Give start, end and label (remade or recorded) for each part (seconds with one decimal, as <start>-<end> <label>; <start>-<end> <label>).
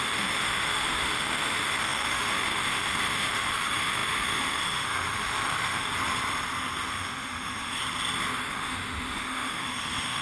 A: 0.0-5.9 remade; 5.9-6.9 recorded; 6.9-7.8 remade; 7.8-8.5 recorded; 8.5-10.2 remade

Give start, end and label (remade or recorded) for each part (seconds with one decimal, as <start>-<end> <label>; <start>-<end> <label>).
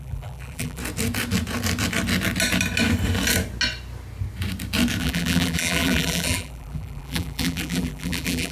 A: 0.0-0.8 remade; 0.8-5.0 recorded; 5.0-8.5 remade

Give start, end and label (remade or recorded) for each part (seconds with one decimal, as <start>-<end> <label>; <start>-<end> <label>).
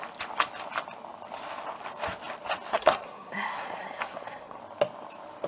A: 0.0-2.7 recorded; 2.7-4.6 remade; 4.6-5.5 recorded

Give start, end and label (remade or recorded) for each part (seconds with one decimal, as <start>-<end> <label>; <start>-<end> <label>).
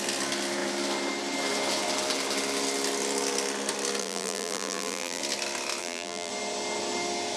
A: 0.0-4.0 recorded; 4.0-5.2 remade; 5.2-5.8 recorded; 5.8-6.3 remade; 6.3-7.4 recorded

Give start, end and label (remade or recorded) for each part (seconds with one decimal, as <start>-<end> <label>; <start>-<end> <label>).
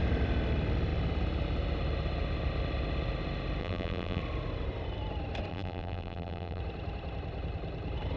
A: 0.0-3.6 recorded; 3.6-4.2 remade; 4.2-5.5 recorded; 5.5-6.6 remade; 6.6-8.2 recorded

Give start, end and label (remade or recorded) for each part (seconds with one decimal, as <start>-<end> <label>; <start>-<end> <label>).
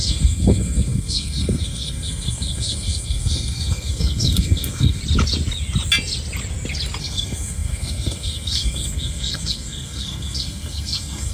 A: 0.0-5.0 remade; 5.0-7.0 recorded; 7.0-11.3 remade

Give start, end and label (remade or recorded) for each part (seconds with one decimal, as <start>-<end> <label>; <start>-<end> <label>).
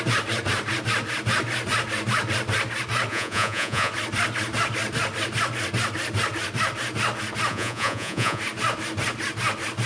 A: 0.0-3.1 recorded; 3.1-3.9 remade; 3.9-7.5 recorded; 7.5-8.4 remade; 8.4-9.9 recorded